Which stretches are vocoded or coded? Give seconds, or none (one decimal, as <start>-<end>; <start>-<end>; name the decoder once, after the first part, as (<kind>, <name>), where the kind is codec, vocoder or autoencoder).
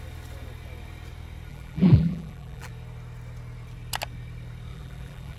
1.5-2.7 (vocoder, BigVGAN v2); 4.7-5.4